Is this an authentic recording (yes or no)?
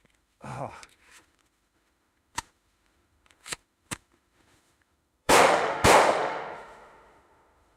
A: no